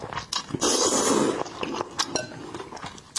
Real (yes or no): yes